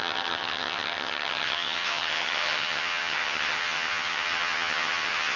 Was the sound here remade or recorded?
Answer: remade